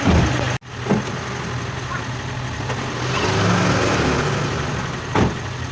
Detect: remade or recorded recorded